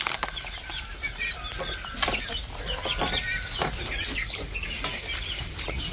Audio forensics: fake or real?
real